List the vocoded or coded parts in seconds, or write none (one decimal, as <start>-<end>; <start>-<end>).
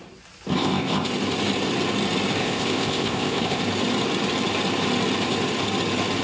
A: 0.5-1.1; 2.4-3.6